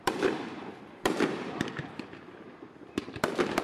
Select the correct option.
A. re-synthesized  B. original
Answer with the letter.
A